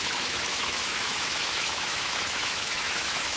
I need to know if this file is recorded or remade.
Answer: remade